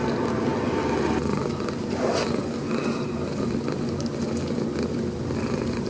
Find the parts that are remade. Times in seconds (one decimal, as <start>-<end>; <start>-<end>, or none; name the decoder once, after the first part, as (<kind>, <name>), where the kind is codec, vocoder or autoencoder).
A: none